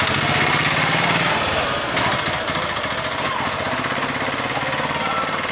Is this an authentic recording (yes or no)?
yes